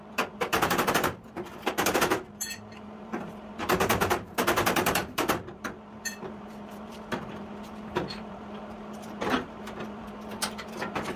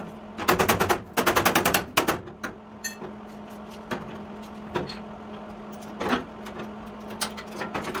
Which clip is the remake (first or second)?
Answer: first